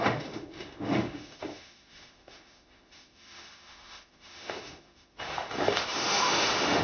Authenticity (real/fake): fake